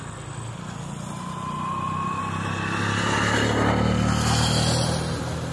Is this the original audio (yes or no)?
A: yes